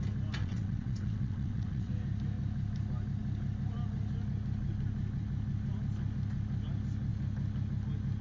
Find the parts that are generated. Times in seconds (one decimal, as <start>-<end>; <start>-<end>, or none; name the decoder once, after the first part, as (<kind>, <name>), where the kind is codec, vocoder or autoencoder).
0.4-1.9 (vocoder, WaveNeXt)